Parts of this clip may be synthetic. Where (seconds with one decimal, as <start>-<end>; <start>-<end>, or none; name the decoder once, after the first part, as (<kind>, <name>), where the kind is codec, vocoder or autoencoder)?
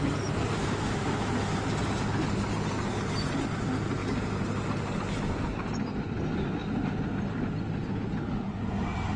0.6-1.3 (autoencoder, DAC-VAE)